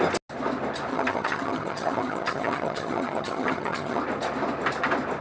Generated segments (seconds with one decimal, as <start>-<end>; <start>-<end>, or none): 0.9-4.0

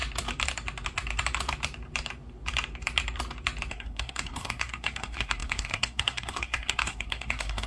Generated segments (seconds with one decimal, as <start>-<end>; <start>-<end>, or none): 3.7-7.7

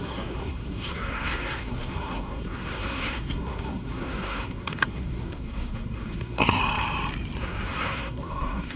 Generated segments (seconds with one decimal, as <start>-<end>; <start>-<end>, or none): 0.0-6.6; 7.4-8.8

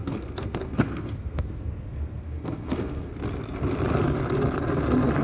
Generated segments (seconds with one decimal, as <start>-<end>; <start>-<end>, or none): 0.0-3.1

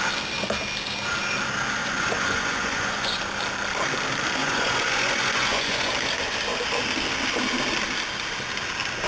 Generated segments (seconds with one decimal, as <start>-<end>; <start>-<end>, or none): 1.8-3.2; 4.4-5.9

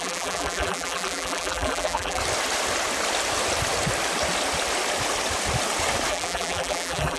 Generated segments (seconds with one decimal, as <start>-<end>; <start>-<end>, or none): 0.0-2.2; 6.1-7.2

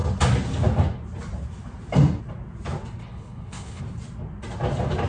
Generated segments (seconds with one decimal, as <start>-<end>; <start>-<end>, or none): 3.0-3.8

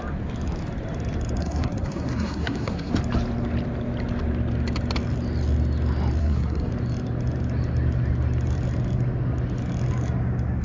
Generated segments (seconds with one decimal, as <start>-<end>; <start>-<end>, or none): 1.4-2.9; 6.2-6.7